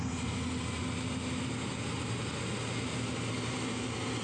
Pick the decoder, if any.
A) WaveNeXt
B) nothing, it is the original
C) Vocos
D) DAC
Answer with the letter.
B